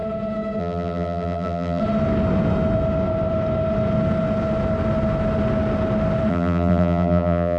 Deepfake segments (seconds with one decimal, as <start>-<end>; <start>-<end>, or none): 0.6-1.8; 6.3-7.6